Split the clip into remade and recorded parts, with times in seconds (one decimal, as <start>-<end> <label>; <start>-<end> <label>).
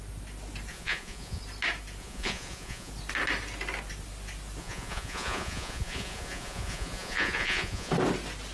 0.0-0.7 recorded; 0.7-1.4 remade; 1.4-2.0 recorded; 2.0-2.9 remade; 2.9-4.6 recorded; 4.6-7.9 remade; 7.9-8.5 recorded